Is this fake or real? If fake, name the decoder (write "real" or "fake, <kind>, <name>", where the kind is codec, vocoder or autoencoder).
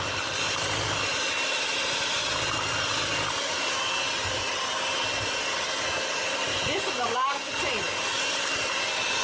real